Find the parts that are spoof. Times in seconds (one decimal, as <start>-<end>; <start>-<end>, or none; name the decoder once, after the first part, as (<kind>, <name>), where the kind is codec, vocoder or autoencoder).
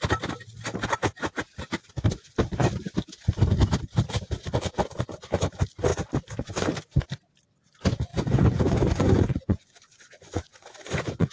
8.1-11.3 (vocoder, Vocos)